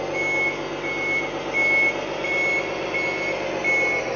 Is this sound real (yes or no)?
yes